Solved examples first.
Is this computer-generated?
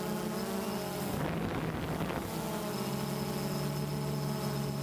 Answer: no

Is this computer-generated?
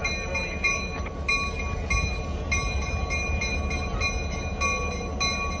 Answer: no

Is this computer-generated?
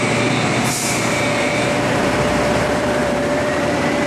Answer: yes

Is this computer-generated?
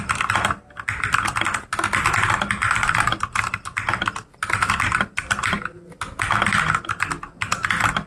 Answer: no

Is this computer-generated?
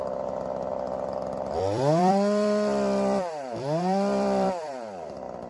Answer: yes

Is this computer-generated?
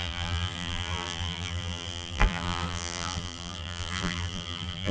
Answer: yes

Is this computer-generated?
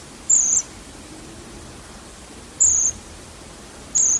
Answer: yes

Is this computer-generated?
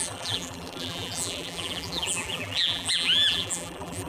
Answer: yes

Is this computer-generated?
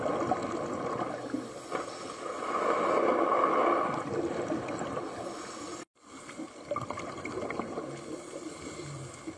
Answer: no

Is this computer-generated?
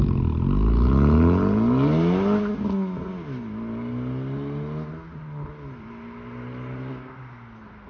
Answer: no